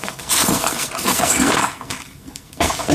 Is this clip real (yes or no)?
no